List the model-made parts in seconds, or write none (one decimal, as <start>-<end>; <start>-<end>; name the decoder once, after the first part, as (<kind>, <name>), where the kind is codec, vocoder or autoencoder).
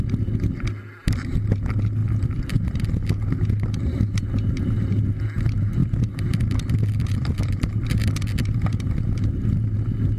2.0-2.9 (vocoder, BigVGAN v2); 5.8-9.5